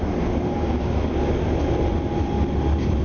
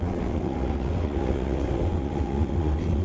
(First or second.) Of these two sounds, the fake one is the second